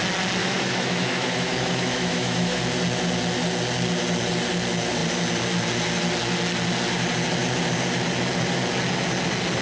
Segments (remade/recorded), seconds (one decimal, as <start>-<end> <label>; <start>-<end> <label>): 0.0-0.4 recorded; 0.4-2.6 remade; 2.6-9.6 recorded